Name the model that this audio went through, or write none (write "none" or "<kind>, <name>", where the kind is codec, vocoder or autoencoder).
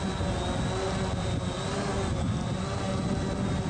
none